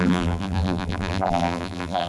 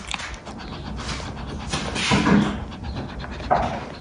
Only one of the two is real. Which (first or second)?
second